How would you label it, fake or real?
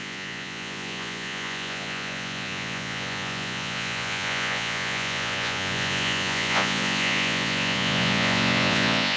fake